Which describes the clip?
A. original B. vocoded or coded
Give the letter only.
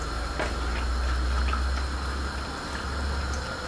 A